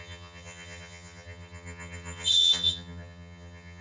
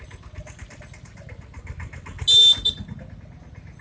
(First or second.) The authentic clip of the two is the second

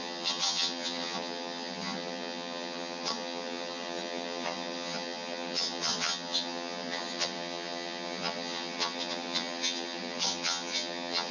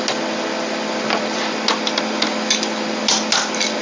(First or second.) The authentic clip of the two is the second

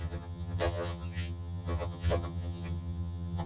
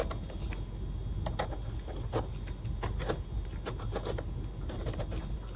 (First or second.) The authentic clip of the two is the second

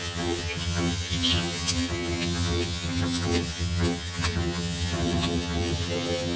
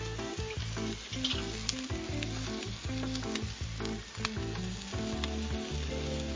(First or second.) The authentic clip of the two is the second